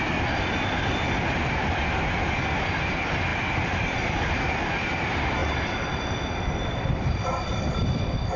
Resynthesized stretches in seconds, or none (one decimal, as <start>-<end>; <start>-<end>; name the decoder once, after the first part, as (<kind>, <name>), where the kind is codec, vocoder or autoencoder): none